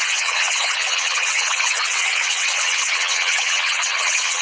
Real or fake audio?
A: fake